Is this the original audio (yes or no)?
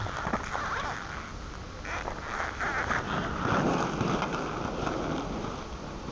yes